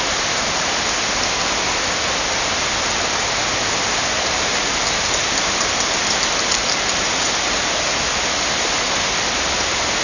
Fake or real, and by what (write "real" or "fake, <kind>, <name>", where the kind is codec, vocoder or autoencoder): real